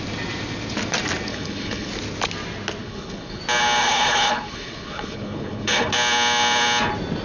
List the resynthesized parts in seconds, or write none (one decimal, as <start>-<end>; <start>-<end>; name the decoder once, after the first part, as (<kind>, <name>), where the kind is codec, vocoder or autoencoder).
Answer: 1.3-1.9 (codec, HILCodec); 2.8-3.4; 3.8-5.9